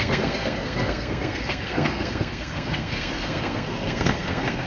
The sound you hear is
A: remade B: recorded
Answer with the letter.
A